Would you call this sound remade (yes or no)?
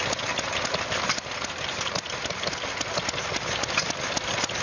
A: no